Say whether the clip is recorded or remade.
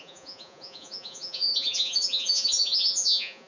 remade